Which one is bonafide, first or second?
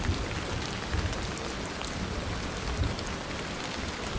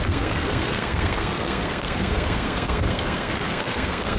first